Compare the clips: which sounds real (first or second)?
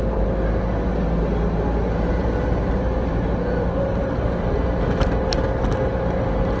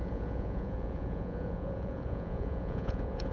first